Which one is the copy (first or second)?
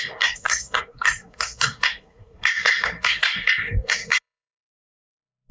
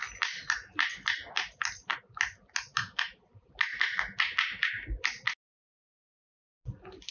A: first